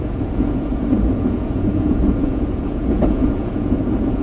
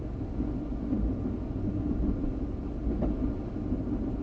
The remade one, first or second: first